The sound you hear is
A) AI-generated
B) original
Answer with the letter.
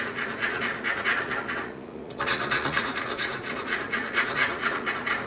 A